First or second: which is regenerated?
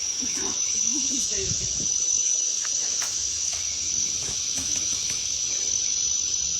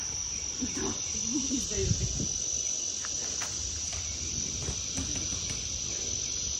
first